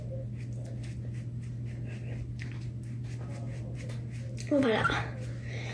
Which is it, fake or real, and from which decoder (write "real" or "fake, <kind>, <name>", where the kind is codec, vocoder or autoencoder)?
real